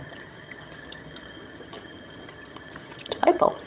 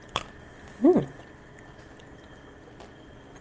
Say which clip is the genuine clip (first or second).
second